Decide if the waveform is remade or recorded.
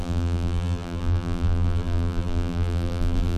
remade